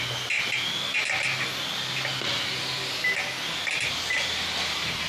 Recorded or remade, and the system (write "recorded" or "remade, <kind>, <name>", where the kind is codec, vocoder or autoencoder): recorded